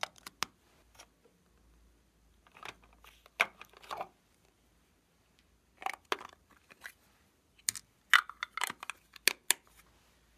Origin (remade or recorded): recorded